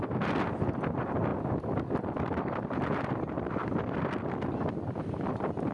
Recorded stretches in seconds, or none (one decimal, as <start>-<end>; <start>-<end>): 0.0-5.7